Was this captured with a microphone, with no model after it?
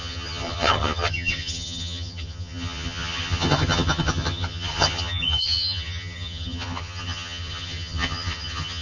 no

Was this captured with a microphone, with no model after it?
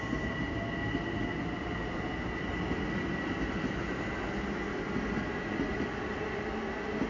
yes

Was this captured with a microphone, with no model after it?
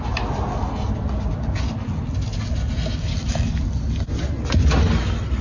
yes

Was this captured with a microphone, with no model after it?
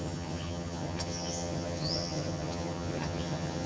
no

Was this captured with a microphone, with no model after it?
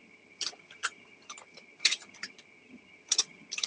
no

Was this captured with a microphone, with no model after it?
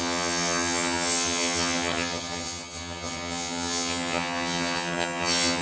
no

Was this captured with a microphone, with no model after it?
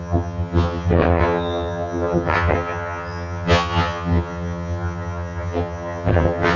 no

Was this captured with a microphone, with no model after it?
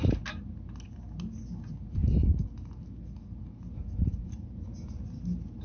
yes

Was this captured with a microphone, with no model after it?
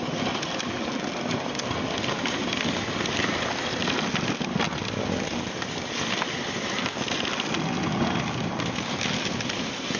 yes